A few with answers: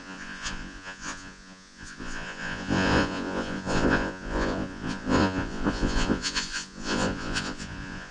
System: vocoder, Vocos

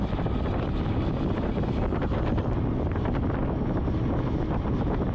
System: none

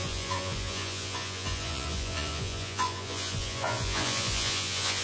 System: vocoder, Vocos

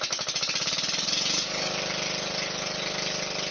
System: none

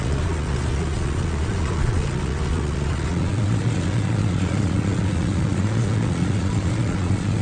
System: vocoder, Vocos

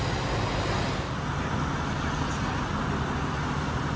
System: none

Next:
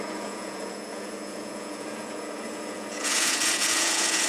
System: vocoder, Vocos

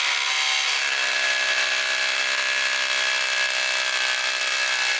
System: none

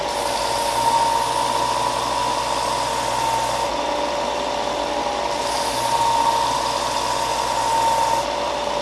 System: none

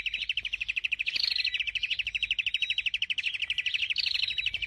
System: none